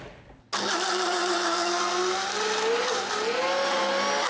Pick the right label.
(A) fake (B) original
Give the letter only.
B